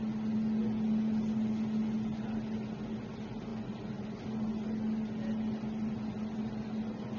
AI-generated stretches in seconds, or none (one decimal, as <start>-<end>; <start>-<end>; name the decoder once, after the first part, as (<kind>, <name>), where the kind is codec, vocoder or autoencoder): none